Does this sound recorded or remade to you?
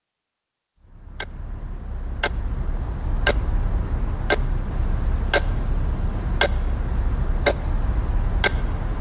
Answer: recorded